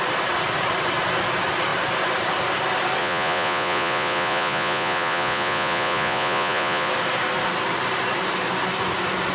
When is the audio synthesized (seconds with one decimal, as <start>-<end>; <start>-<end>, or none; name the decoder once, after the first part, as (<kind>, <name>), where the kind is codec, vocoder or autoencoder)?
3.0-6.9 (vocoder, Vocos)